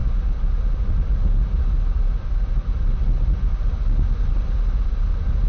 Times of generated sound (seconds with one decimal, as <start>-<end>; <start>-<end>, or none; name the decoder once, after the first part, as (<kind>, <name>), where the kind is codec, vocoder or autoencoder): none